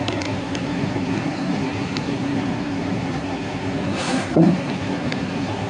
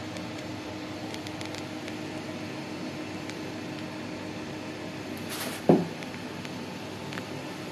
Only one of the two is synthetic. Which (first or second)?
first